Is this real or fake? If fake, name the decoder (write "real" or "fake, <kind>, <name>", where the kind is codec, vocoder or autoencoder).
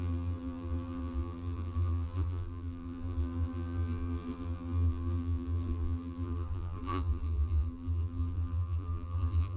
fake, vocoder, BigVGAN v2